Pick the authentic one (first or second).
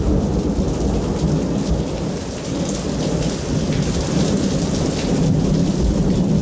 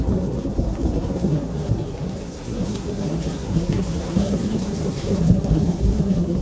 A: first